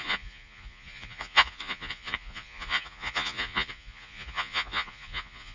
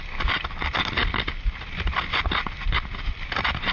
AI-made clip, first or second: first